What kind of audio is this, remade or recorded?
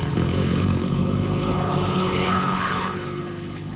remade